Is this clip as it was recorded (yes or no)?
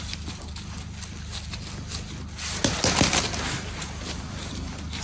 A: yes